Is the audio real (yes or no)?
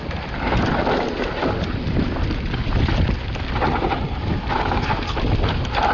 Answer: yes